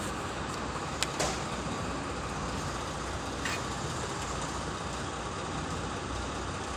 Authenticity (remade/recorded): recorded